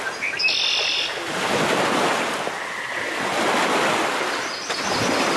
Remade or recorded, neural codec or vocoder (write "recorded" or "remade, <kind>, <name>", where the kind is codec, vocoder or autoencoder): recorded